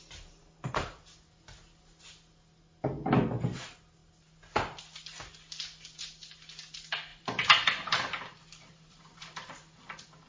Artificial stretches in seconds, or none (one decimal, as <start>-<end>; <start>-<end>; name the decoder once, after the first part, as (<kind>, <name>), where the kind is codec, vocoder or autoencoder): 7.1-9.5 (vocoder, BigVGAN v2)